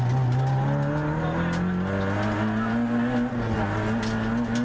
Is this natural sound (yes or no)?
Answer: yes